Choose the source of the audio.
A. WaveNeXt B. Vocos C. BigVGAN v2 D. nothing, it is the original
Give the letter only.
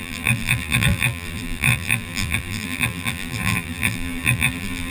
C